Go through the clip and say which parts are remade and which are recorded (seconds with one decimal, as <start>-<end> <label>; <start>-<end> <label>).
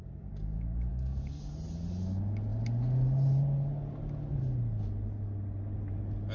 0.0-0.9 recorded; 0.9-1.5 remade; 1.5-6.3 recorded